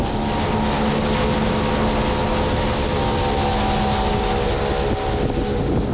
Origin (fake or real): real